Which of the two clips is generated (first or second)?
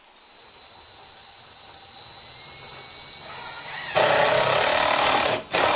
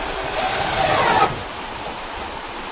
second